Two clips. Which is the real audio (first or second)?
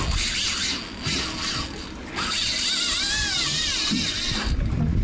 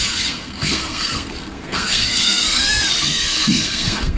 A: first